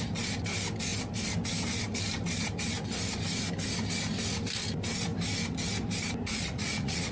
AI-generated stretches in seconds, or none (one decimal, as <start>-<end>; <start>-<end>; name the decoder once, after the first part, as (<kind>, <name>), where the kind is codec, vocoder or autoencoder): 6.3-7.1 (vocoder, Vocos)